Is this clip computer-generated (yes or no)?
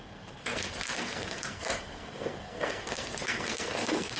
yes